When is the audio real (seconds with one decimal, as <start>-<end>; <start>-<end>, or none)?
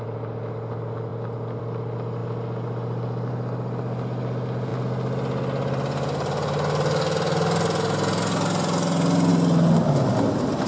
0.0-10.7